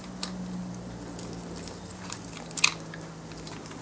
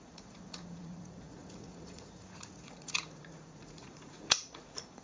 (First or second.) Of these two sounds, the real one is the first